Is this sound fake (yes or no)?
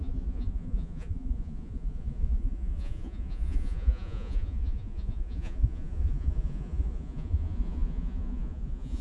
yes